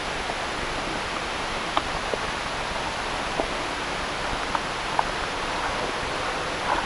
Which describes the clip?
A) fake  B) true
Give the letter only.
B